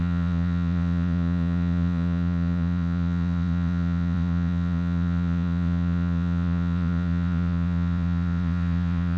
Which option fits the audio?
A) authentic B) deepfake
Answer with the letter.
B